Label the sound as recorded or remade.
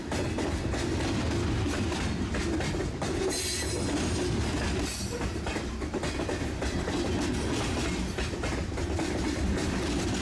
recorded